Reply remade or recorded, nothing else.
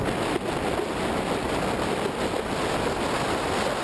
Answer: recorded